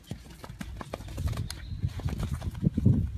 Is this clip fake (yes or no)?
no